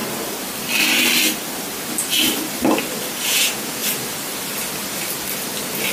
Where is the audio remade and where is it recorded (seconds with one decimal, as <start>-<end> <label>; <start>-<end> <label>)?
0.0-3.2 recorded; 3.2-3.8 remade; 3.8-5.9 recorded